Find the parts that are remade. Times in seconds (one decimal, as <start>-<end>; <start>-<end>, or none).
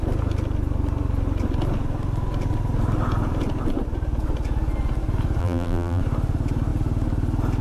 5.4-6.0